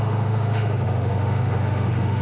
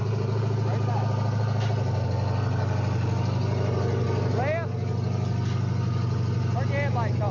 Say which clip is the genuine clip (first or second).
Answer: second